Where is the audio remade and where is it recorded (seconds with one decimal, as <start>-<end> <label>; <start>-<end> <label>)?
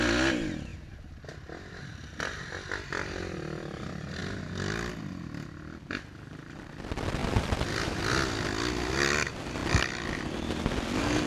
0.0-7.2 recorded; 7.2-8.1 remade; 8.1-9.6 recorded; 9.6-10.6 remade; 10.6-11.3 recorded